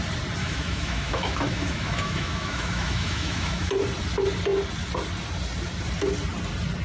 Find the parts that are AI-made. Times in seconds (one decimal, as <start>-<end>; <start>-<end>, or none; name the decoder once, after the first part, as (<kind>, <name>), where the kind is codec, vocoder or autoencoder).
0.4-3.7 (autoencoder, DAC-VAE)